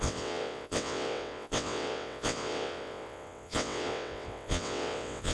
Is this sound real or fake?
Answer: fake